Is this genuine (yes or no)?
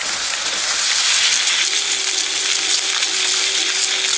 yes